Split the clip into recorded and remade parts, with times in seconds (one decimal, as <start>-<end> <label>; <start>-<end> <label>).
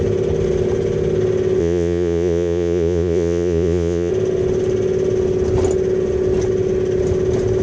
0.0-1.6 recorded; 1.6-4.1 remade; 4.1-7.6 recorded